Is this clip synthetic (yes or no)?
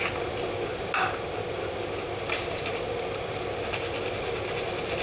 no